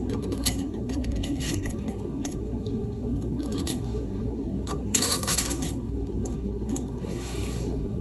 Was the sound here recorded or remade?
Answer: remade